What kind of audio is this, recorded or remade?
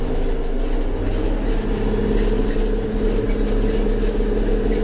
recorded